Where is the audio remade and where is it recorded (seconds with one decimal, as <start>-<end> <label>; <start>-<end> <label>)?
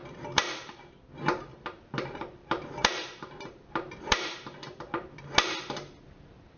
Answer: 0.0-0.9 remade; 0.9-1.5 recorded; 1.5-5.2 remade; 5.2-6.6 recorded